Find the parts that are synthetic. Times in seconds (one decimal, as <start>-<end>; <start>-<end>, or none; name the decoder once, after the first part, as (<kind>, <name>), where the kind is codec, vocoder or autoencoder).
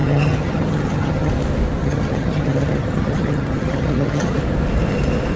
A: 0.0-1.3 (vocoder, HiFi-GAN); 1.8-4.4